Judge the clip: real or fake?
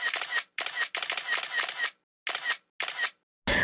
real